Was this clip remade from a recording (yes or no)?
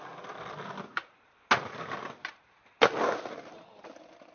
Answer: no